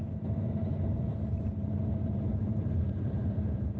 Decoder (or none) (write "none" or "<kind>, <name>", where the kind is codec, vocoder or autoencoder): vocoder, BigVGAN v2